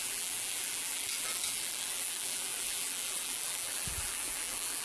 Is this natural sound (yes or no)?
no